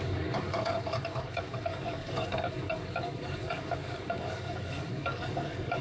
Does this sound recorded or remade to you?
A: remade